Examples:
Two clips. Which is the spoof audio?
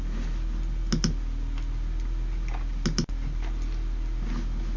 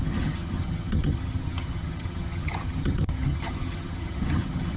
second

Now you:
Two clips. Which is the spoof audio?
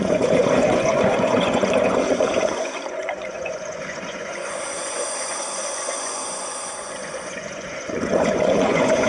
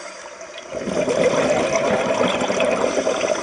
first